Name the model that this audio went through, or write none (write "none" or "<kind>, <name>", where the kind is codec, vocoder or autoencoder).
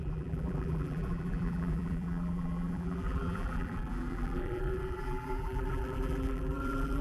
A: vocoder, BigVGAN v2